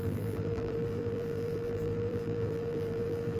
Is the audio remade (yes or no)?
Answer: yes